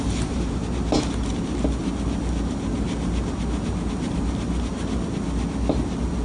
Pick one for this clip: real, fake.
real